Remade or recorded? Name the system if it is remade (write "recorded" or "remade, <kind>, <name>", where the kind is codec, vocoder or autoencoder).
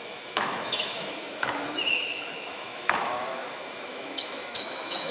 remade, autoencoder, DAC-VAE